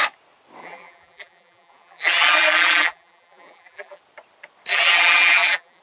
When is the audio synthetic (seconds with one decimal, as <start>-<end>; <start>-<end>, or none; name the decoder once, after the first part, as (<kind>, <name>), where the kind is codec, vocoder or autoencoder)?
0.6-4.0 (vocoder, BigVGAN v2); 4.7-5.8